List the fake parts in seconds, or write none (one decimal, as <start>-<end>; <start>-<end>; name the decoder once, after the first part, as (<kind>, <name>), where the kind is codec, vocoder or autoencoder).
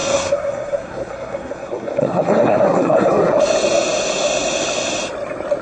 0.0-3.4 (codec, SNAC)